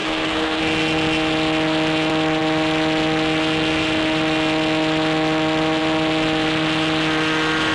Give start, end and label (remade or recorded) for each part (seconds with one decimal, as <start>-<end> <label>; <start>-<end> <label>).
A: 0.0-0.6 remade; 0.6-7.7 recorded